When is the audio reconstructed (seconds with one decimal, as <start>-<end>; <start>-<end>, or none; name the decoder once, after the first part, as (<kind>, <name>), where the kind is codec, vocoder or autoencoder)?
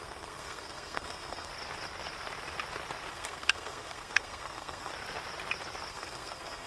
0.0-1.5 (codec, SNAC); 3.1-4.9; 5.9-6.7